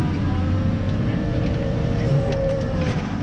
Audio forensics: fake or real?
fake